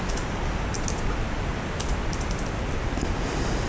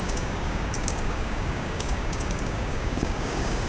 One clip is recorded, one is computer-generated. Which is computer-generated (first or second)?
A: second